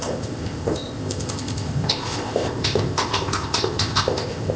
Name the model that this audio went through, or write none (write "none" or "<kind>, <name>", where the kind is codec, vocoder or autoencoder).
codec, ZipCodec